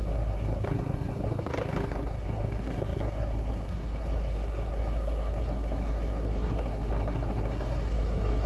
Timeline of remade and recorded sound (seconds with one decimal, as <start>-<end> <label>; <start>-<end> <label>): 0.0-8.5 remade